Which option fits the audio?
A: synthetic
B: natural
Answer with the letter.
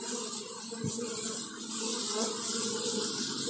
B